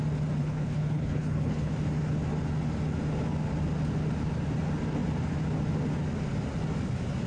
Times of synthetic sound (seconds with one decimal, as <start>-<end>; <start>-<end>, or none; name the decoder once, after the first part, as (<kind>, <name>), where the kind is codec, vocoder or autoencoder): 0.4-1.7 (codec, HILCodec)